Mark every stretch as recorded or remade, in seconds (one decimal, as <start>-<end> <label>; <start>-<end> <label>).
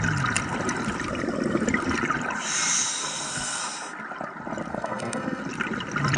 0.0-3.0 recorded; 3.0-3.6 remade; 3.6-4.7 recorded; 4.7-5.4 remade; 5.4-6.2 recorded